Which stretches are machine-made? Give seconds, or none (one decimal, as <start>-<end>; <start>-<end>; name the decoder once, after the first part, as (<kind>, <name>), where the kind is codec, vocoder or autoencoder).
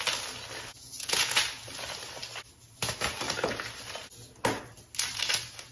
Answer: 0.7-1.4 (vocoder, Vocos)